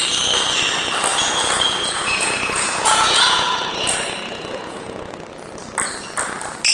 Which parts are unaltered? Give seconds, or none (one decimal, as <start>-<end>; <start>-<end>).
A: 0.0-1.1; 5.1-6.7